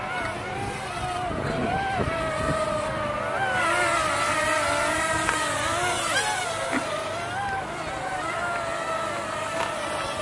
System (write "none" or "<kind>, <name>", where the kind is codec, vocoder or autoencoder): none